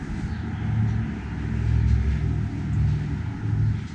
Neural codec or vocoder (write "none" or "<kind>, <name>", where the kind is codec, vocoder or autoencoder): none